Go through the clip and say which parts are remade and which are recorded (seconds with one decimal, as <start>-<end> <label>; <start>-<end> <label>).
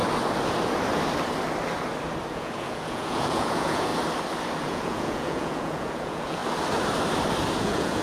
0.0-2.3 recorded; 2.3-3.9 remade; 3.9-4.6 recorded; 4.6-6.4 remade; 6.4-7.6 recorded; 7.6-8.0 remade